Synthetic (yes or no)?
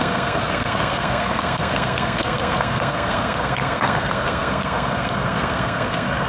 yes